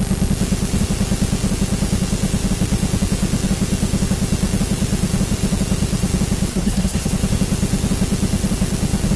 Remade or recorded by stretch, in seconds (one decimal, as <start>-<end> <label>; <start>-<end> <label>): 0.0-6.5 recorded; 6.5-7.1 remade; 7.1-9.2 recorded